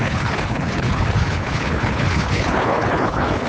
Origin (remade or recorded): remade